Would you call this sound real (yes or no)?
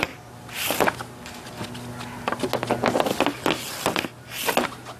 yes